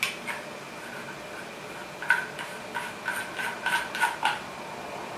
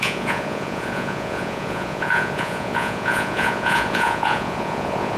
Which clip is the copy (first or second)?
second